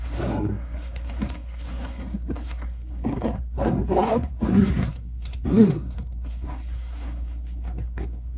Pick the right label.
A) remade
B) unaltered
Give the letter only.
A